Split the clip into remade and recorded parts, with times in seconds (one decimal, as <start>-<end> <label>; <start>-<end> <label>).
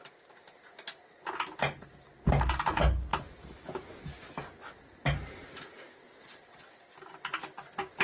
0.0-8.0 recorded